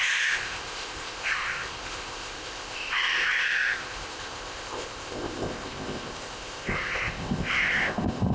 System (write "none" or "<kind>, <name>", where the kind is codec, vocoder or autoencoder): codec, ZipCodec